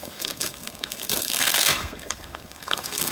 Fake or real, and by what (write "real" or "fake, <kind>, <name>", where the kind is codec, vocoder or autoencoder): fake, codec, SNAC